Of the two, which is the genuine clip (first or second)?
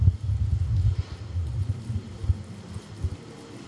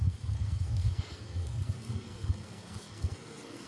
first